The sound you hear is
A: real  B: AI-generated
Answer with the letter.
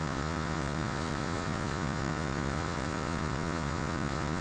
B